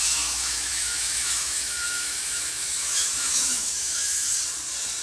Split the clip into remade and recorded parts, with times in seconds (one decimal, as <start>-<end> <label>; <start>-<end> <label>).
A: 0.0-4.3 remade; 4.3-5.0 recorded